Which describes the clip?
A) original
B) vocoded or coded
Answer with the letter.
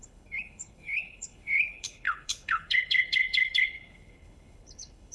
B